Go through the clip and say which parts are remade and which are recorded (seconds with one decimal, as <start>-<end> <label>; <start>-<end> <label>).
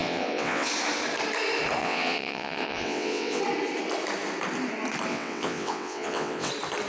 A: 0.0-0.7 remade; 0.7-1.8 recorded; 1.8-3.4 remade; 3.4-5.1 recorded; 5.1-6.5 remade; 6.5-6.9 recorded